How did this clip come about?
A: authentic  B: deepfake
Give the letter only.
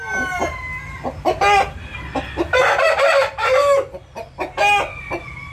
A